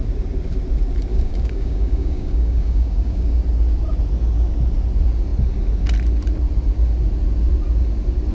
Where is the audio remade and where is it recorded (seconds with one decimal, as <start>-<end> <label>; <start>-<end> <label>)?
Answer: 0.0-1.1 recorded; 1.1-3.4 remade; 3.4-8.3 recorded